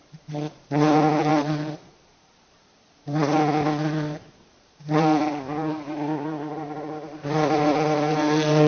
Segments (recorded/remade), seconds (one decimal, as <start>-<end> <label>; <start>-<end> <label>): 0.0-8.7 remade